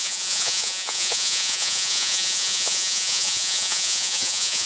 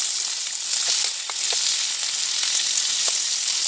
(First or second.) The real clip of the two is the second